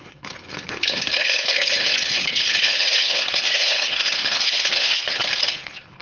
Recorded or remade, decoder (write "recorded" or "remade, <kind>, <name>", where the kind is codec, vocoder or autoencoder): remade, codec, HILCodec